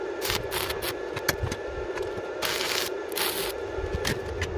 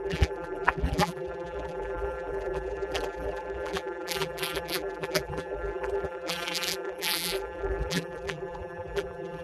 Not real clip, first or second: second